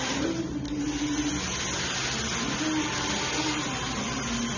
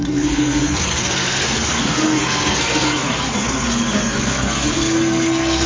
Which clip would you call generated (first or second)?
second